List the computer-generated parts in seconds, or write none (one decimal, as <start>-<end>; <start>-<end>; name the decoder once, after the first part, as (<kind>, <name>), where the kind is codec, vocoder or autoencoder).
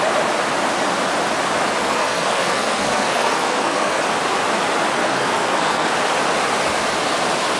1.8-4.0 (codec, SNAC); 5.0-5.9